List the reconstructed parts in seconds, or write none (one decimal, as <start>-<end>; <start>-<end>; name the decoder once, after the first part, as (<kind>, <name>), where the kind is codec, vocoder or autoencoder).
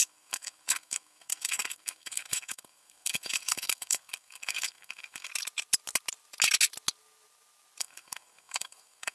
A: 0.0-5.3 (codec, SNAC); 7.8-9.1